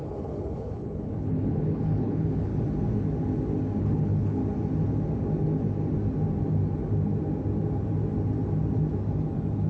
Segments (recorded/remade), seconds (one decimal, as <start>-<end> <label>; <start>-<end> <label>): 0.0-2.5 remade; 2.5-3.8 recorded; 3.8-4.4 remade; 4.4-9.7 recorded